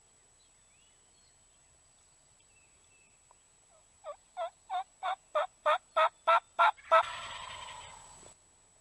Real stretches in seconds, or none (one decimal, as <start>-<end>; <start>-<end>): 0.0-2.2; 5.4-8.8